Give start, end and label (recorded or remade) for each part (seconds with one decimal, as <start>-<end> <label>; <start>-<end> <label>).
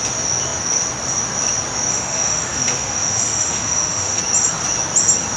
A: 0.0-1.9 recorded; 1.9-4.2 remade; 4.2-5.4 recorded